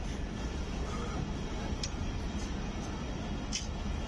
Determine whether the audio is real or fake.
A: real